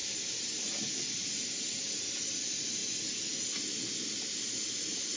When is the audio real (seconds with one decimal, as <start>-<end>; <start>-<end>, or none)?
0.0-5.2